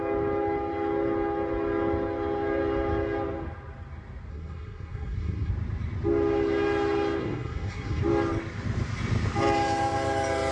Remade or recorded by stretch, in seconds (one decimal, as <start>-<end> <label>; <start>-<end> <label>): 0.0-4.3 recorded; 4.3-5.5 remade; 5.5-7.2 recorded; 7.2-8.0 remade; 8.0-10.5 recorded